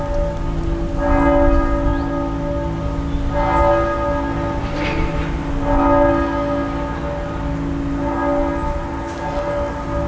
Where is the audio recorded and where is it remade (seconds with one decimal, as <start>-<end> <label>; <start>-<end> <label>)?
0.0-10.1 recorded